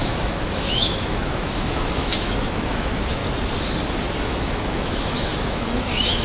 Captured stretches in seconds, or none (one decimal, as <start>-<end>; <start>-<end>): 3.2-4.2